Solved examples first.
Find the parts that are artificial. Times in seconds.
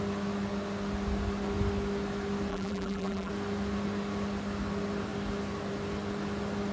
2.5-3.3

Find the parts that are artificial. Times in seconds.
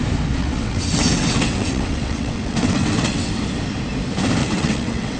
0.4-3.3; 4.4-5.2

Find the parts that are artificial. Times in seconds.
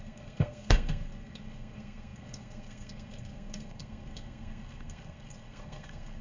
0.0-6.2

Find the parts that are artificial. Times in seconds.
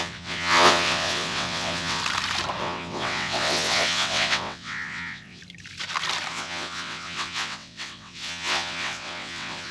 0.0-2.0; 2.6-5.4; 6.3-9.7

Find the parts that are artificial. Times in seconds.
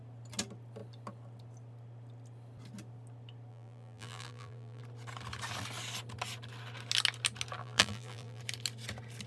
3.5-4.8; 7.6-8.4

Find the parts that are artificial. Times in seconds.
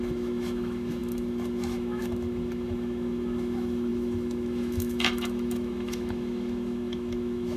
0.0-7.6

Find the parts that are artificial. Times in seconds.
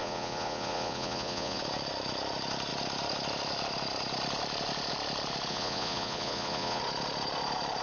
0.0-1.6; 5.5-6.8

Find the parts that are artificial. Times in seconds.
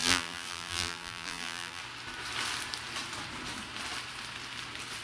0.0-1.8